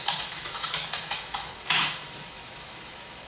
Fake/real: fake